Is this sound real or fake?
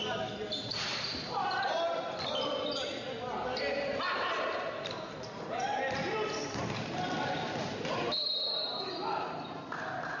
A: real